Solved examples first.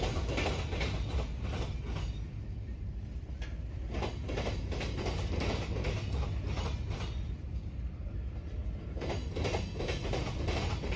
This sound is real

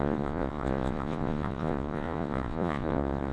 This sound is fake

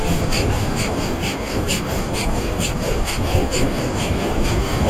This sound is fake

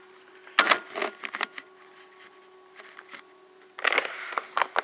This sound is real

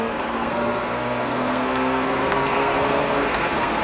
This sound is fake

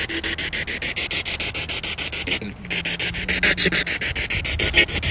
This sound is real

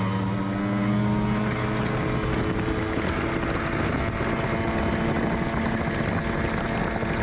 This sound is real